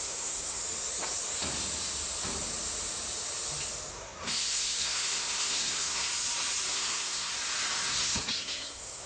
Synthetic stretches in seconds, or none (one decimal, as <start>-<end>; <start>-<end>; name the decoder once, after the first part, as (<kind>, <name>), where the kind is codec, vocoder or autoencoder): 0.0-0.6 (codec, SNAC); 3.9-6.1; 6.7-7.3; 7.9-9.1